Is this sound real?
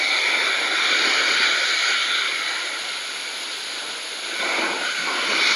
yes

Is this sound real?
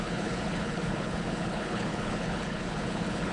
no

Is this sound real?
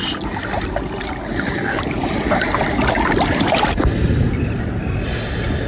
yes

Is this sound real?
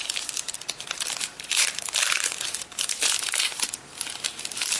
no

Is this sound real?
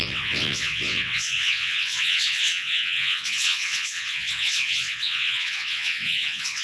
no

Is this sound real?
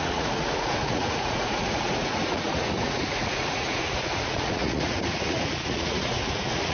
no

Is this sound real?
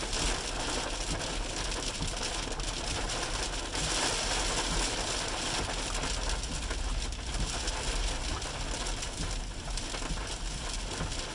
yes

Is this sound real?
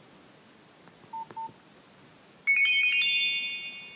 yes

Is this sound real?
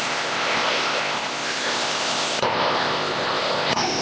no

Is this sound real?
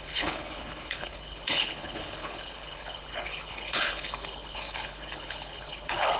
no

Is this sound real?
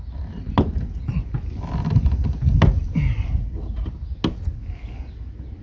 yes